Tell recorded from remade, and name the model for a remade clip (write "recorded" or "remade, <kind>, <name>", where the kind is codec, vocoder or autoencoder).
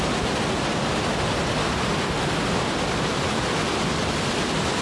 recorded